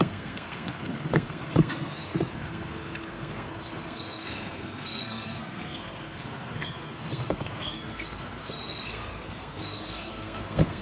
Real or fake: fake